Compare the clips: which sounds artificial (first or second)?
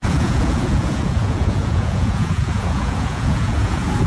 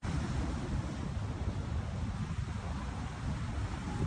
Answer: first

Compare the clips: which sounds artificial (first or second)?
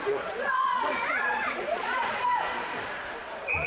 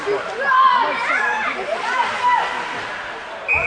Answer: first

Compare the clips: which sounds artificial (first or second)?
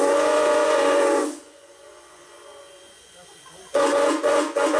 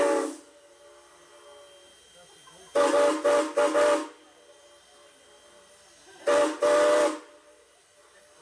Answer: first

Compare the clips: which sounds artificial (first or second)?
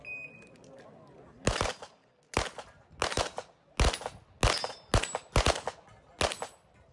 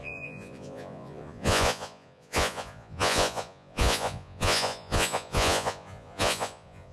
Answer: second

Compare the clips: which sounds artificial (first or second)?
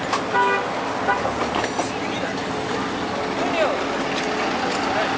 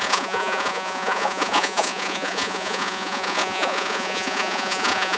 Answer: second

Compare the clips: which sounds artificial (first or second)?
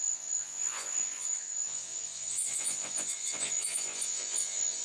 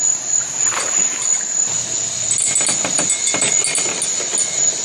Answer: first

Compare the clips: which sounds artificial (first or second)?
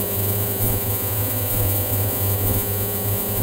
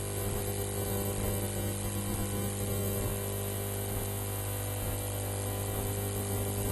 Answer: first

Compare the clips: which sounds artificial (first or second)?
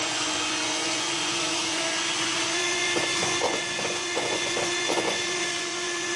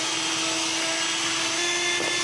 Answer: first